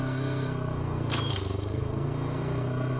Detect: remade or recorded remade